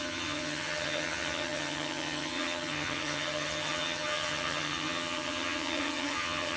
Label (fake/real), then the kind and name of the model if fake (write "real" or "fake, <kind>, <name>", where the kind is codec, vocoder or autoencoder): fake, vocoder, HiFi-GAN